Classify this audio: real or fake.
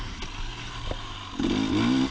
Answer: real